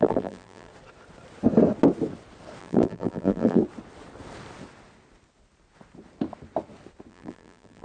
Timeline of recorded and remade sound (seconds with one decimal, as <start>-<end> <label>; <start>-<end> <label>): 0.0-0.7 remade; 0.7-2.6 recorded; 2.6-3.6 remade; 3.6-7.1 recorded; 7.1-7.8 remade